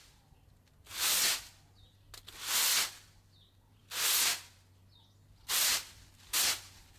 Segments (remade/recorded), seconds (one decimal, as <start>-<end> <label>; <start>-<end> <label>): 0.0-0.9 recorded; 0.9-1.5 remade; 1.5-7.0 recorded